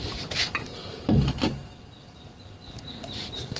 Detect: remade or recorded recorded